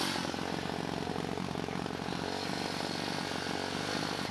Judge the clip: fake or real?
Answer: real